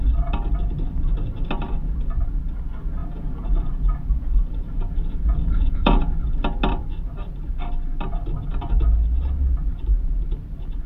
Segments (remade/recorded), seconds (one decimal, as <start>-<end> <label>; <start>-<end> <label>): 0.0-3.0 recorded; 3.0-6.3 remade; 6.3-10.9 recorded